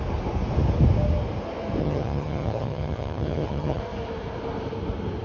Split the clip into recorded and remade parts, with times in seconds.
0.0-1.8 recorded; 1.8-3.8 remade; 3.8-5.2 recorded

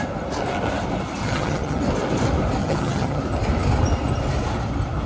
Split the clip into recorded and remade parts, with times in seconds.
0.0-1.2 recorded; 1.2-1.8 remade; 1.8-2.6 recorded; 2.6-3.2 remade; 3.2-5.1 recorded

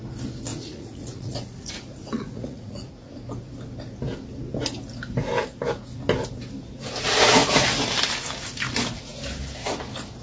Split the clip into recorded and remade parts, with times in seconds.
0.0-0.5 recorded; 0.5-2.9 remade; 2.9-10.2 recorded

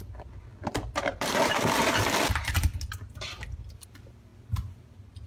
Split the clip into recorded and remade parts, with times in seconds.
0.0-0.5 recorded; 0.5-3.7 remade; 3.7-5.3 recorded

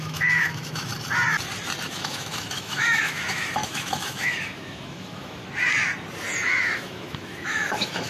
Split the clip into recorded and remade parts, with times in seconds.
0.0-0.9 remade; 0.9-1.9 recorded; 1.9-5.4 remade; 5.4-6.6 recorded; 6.6-8.1 remade

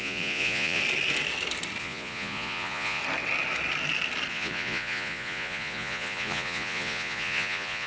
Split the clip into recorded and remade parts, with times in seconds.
0.0-0.8 remade; 0.8-1.8 recorded; 1.8-3.0 remade; 3.0-4.3 recorded; 4.3-7.9 remade

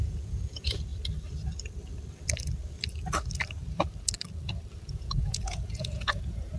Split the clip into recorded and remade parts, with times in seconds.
0.0-0.9 remade; 0.9-4.9 recorded; 4.9-6.6 remade

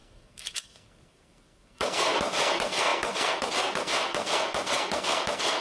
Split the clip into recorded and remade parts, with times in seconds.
0.0-5.6 remade